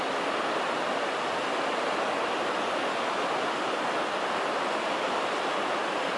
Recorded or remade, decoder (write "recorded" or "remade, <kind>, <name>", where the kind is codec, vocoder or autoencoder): recorded